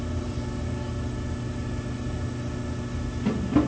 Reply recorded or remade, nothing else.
recorded